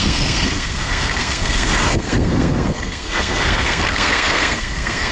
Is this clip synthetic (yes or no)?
yes